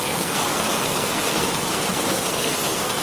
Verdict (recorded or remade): remade